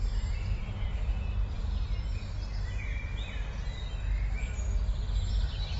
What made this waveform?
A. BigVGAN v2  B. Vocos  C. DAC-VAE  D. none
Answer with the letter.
D